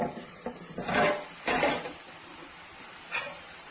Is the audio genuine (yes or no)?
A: yes